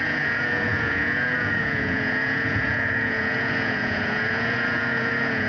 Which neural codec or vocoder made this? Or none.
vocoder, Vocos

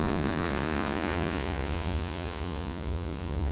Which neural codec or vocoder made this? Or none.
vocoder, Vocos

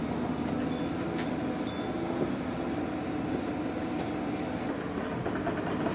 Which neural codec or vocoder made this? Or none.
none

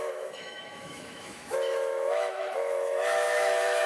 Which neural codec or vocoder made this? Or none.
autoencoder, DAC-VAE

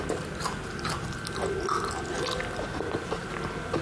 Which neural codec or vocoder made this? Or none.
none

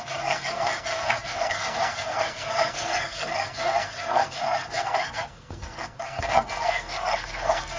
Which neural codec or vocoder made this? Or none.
codec, SNAC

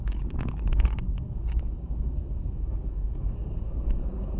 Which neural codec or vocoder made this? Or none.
codec, SNAC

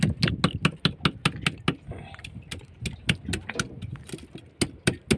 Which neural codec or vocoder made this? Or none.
none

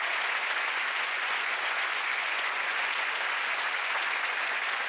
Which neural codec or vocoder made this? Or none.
vocoder, Vocos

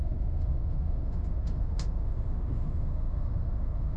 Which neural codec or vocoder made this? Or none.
autoencoder, DAC-VAE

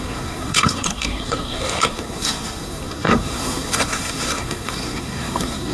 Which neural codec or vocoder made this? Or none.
codec, SNAC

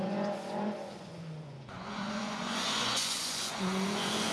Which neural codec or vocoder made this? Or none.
vocoder, Vocos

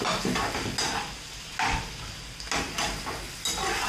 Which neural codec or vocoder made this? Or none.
none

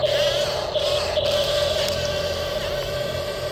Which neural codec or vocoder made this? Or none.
none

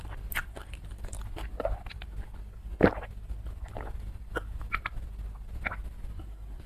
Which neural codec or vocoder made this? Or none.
vocoder, BigVGAN v2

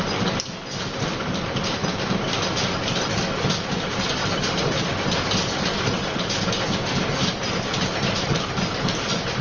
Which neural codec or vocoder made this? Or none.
none